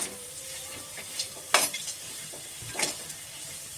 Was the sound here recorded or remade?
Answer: remade